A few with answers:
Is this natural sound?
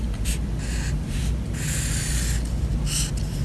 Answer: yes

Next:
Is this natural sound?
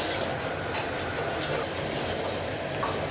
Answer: yes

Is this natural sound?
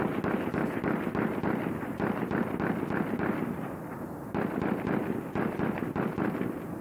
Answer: yes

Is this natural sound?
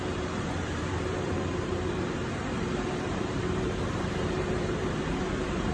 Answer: no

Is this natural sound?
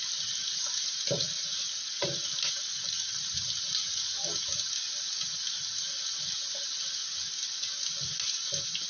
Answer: yes